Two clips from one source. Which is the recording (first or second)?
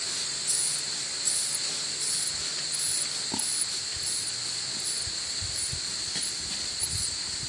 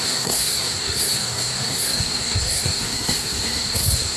first